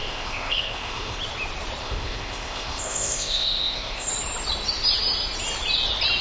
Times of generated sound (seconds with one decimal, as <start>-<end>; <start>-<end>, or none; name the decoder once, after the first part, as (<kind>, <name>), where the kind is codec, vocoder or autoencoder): 0.0-1.2 (codec, ZipCodec); 1.8-4.1